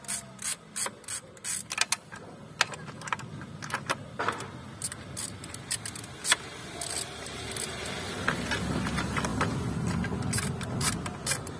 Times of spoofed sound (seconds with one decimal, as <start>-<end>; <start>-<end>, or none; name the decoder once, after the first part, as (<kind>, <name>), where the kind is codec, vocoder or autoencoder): none